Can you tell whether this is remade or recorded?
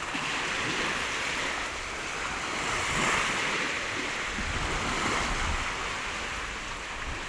recorded